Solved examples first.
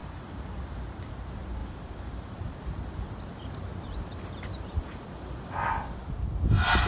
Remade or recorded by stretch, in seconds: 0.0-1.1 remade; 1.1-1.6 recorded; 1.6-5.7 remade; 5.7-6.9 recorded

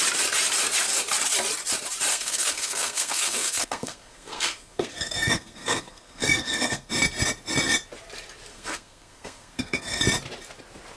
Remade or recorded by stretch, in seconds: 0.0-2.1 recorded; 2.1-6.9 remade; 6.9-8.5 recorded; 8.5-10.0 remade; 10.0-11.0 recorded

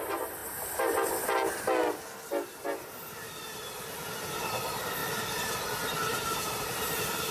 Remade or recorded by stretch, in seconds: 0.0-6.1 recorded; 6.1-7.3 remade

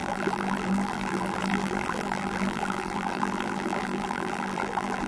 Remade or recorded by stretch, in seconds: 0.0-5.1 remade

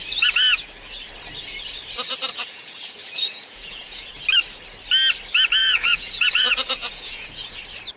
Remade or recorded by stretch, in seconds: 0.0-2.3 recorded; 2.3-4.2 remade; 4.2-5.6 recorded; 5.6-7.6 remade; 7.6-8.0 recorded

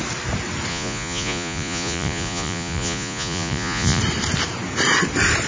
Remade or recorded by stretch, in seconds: 0.0-0.7 recorded; 0.7-4.0 remade; 4.0-5.5 recorded